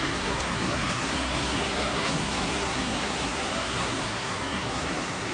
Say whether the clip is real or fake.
fake